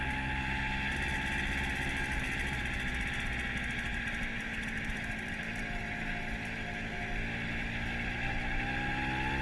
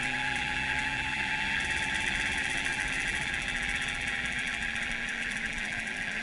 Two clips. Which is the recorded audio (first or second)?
first